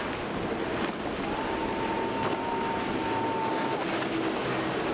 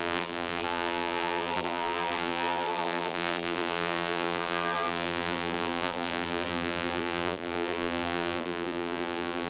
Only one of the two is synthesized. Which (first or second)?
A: second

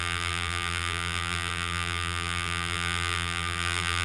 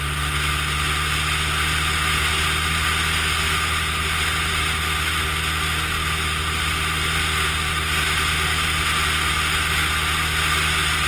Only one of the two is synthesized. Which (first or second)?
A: first